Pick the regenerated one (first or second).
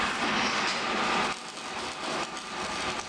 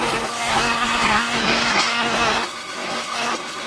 second